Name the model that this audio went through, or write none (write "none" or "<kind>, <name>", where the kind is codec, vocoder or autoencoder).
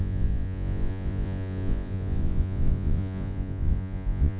vocoder, Vocos